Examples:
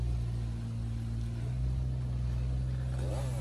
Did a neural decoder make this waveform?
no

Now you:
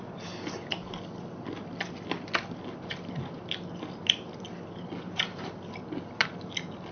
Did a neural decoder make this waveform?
no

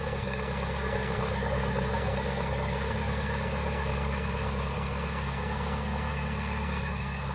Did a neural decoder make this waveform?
yes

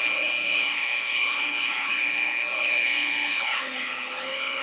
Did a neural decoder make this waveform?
yes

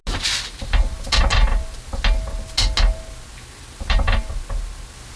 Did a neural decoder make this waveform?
no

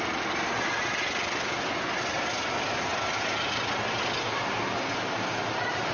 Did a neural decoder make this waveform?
no